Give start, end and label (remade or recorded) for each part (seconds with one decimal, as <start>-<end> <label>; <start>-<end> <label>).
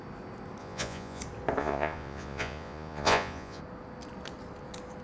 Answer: 0.0-0.6 recorded; 0.6-1.2 remade; 1.2-1.6 recorded; 1.6-3.6 remade; 3.6-5.0 recorded